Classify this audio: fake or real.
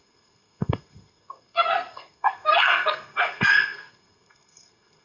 fake